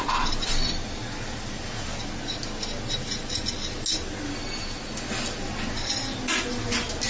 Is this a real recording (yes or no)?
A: yes